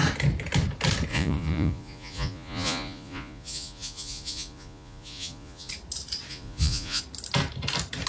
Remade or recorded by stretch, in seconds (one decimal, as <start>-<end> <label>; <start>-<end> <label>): 0.0-1.1 recorded; 1.1-5.7 remade; 5.7-6.3 recorded; 6.3-7.0 remade; 7.0-8.1 recorded